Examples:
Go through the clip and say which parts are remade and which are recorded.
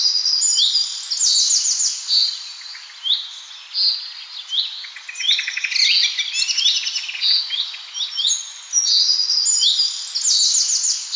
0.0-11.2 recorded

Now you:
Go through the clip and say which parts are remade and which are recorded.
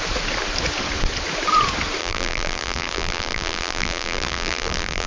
0.0-2.0 recorded; 2.0-5.1 remade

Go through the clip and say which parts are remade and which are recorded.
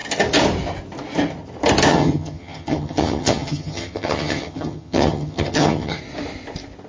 0.0-1.9 recorded; 1.9-6.0 remade; 6.0-6.9 recorded